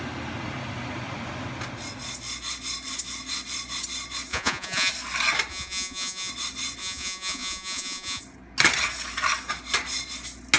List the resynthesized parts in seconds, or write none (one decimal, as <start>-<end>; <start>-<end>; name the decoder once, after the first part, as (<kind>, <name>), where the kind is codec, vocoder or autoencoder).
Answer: 4.3-4.9 (vocoder, Vocos); 5.5-6.3; 6.8-8.2